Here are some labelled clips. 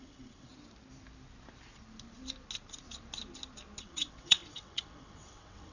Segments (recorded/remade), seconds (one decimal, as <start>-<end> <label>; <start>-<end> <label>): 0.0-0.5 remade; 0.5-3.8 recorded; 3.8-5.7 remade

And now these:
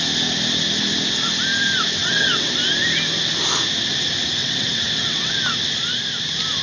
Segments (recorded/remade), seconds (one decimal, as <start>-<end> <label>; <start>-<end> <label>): 0.0-2.0 recorded; 2.0-2.5 remade; 2.5-4.4 recorded; 4.4-5.3 remade; 5.3-6.6 recorded

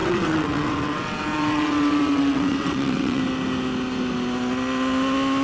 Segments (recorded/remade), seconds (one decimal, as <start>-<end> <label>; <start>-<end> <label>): 0.0-3.2 remade; 3.2-5.4 recorded

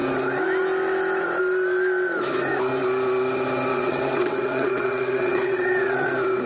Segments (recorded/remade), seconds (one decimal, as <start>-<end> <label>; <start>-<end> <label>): 0.0-3.7 recorded; 3.7-6.1 remade; 6.1-6.5 recorded

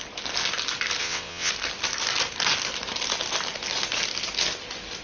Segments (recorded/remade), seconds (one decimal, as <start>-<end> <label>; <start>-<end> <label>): 0.0-1.0 recorded; 1.0-1.5 remade; 1.5-5.0 recorded